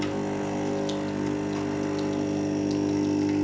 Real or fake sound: real